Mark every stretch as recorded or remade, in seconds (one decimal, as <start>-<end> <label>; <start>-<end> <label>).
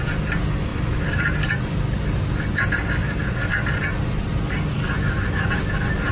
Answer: 0.0-0.7 recorded; 0.7-2.0 remade; 2.0-6.1 recorded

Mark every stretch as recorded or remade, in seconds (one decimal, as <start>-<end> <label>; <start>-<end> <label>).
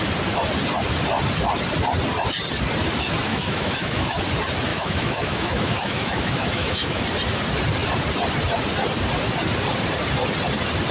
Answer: 0.0-3.3 recorded; 3.3-4.2 remade; 4.2-4.7 recorded; 4.7-7.0 remade; 7.0-10.9 recorded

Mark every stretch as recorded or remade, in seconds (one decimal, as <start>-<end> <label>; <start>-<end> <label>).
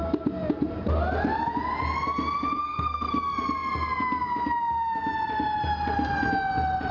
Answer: 0.0-2.6 recorded; 2.6-3.1 remade; 3.1-6.9 recorded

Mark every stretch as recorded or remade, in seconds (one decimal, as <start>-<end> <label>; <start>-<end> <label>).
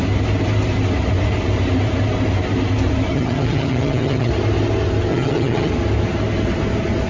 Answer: 0.0-3.1 recorded; 3.1-4.3 remade; 4.3-5.1 recorded; 5.1-5.7 remade; 5.7-7.1 recorded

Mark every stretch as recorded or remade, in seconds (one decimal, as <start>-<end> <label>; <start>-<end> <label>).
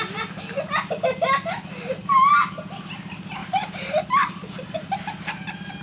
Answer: 0.0-3.4 recorded; 3.4-5.0 remade; 5.0-5.8 recorded